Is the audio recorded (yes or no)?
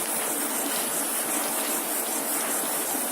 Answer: yes